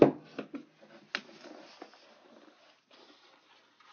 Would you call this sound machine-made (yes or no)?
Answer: no